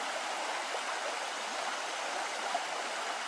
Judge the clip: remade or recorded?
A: recorded